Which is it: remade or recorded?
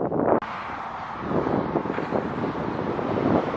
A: recorded